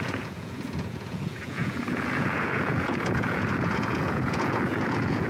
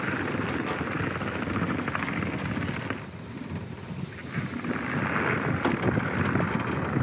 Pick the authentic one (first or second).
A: second